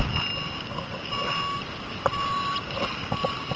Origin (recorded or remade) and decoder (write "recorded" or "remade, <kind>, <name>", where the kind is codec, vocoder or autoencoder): recorded